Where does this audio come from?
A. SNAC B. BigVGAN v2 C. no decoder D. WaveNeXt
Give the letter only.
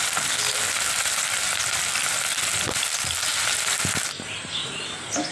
C